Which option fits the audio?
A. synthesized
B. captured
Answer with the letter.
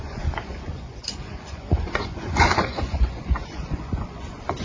A